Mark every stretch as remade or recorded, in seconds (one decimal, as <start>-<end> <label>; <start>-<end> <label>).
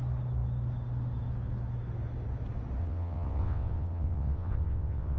0.0-2.8 recorded; 2.8-5.2 remade